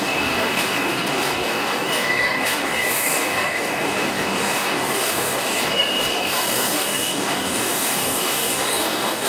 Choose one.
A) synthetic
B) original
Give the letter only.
A